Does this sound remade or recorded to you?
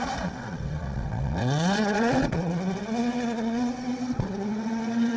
remade